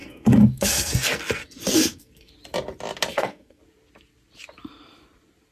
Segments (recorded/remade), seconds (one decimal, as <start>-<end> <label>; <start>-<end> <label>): 0.0-2.3 remade; 2.3-3.1 recorded; 3.1-3.6 remade; 3.6-5.5 recorded